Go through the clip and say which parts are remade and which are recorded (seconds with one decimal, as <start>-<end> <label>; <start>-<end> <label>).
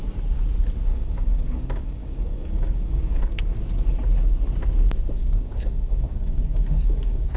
0.0-0.9 recorded; 0.9-3.6 remade; 3.6-5.2 recorded; 5.2-7.4 remade